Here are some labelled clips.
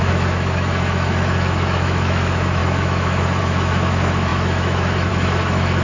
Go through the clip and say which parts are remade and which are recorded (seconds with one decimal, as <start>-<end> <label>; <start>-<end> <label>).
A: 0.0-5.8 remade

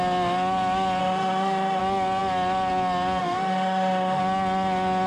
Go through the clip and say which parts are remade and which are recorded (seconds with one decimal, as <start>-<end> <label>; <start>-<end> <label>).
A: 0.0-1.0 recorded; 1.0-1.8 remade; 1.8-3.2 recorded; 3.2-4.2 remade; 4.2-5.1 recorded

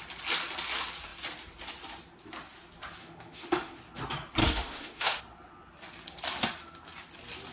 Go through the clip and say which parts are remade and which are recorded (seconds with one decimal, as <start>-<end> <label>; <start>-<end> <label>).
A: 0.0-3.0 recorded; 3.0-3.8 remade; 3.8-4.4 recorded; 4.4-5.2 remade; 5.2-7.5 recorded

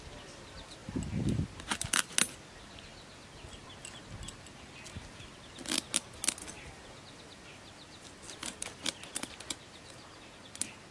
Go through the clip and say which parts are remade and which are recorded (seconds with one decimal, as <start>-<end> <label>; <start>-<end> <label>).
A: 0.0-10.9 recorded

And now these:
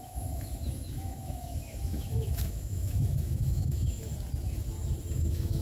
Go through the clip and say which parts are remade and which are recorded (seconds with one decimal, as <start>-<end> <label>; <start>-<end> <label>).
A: 0.0-4.1 remade; 4.1-5.1 recorded; 5.1-5.6 remade